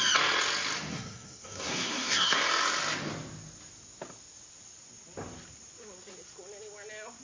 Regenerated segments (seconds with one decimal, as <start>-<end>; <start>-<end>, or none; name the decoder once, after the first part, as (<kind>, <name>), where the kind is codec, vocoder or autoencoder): 0.9-2.4 (codec, SNAC)

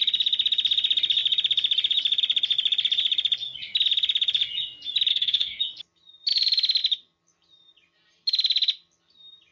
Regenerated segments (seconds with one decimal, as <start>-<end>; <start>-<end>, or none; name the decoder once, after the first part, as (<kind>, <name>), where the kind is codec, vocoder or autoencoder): 5.1-5.6 (codec, SNAC)

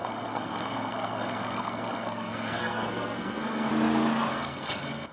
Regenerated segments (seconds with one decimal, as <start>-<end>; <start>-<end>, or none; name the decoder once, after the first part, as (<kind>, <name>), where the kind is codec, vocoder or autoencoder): 0.0-3.7 (codec, SNAC); 4.3-5.1

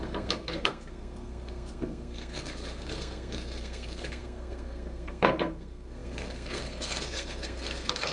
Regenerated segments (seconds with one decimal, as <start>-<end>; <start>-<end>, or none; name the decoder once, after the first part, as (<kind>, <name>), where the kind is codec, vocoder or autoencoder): 0.0-8.1 (codec, SNAC)

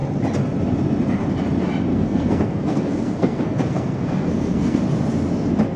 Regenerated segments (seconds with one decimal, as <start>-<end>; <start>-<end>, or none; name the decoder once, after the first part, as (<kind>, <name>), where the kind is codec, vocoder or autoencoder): 1.9-4.8 (codec, SNAC)